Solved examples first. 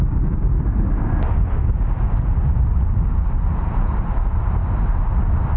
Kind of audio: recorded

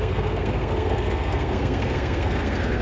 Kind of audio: remade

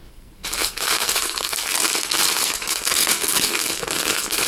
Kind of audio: remade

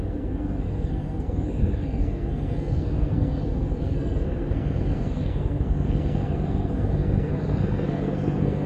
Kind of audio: remade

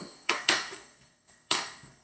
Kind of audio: remade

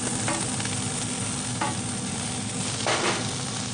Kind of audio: recorded